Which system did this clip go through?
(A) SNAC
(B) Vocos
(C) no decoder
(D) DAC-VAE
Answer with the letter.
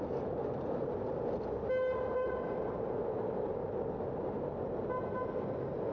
C